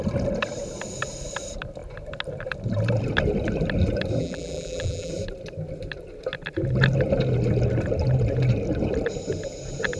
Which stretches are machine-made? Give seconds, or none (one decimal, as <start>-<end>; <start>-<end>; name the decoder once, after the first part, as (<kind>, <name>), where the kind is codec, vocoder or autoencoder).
4.2-5.1 (vocoder, BigVGAN v2)